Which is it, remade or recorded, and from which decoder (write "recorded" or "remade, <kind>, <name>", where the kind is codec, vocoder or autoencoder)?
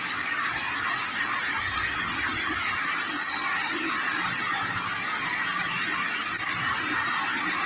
recorded